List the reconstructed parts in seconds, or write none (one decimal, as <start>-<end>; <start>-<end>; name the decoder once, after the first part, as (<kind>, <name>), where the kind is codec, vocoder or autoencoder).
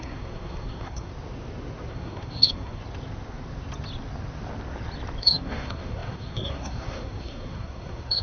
0.0-1.1 (codec, SNAC); 1.9-2.8; 5.2-8.2